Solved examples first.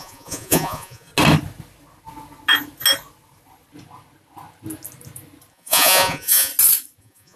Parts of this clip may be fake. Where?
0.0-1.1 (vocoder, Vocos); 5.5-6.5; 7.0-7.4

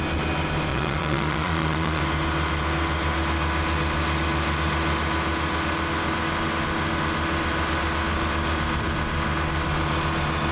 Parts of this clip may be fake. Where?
0.7-2.0 (vocoder, Vocos)

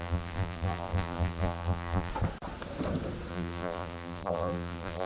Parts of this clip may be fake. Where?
0.0-2.1 (vocoder, BigVGAN v2); 3.3-5.1

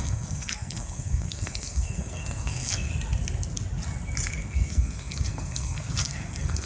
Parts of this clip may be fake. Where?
0.0-2.9 (codec, SNAC); 4.3-6.7

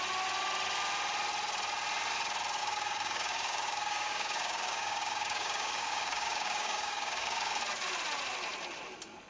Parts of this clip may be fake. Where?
2.6-7.6 (codec, DAC)

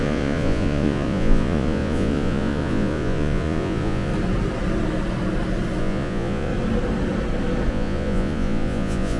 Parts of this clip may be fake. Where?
0.0-4.1 (vocoder, Vocos); 5.8-6.5; 7.7-9.2

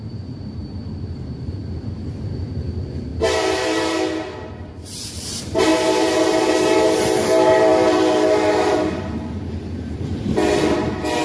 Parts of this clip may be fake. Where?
0.0-3.1 (vocoder, BigVGAN v2); 4.5-5.7; 6.5-11.2

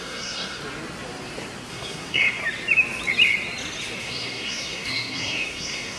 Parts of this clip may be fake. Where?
0.0-0.6 (codec, SNAC); 1.7-2.4; 4.0-6.0